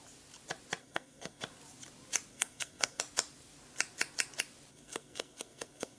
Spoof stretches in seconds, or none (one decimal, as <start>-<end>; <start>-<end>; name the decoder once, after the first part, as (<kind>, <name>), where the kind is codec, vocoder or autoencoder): 0.8-1.4 (codec, SNAC); 2.3-3.0; 4.7-6.0